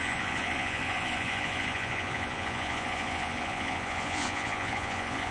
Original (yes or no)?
no